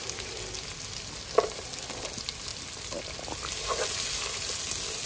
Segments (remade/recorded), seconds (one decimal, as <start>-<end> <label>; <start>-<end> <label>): 0.0-5.1 recorded